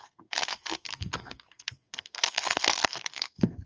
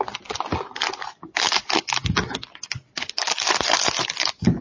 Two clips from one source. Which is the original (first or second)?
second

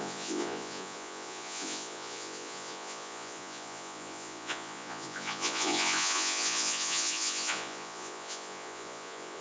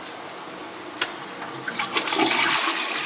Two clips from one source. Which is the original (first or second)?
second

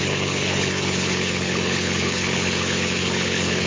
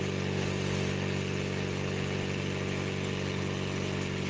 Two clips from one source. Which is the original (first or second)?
second